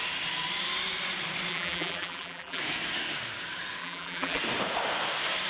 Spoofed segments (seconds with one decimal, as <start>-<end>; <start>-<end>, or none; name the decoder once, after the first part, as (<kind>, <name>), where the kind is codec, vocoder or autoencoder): 1.5-2.6 (vocoder, BigVGAN v2); 3.8-4.4